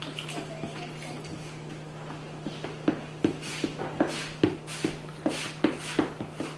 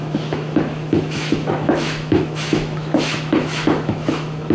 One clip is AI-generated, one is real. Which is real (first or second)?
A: first